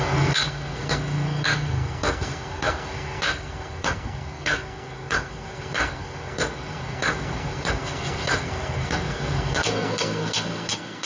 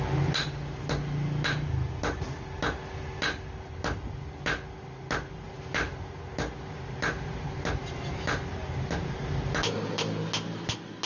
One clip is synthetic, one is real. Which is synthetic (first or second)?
first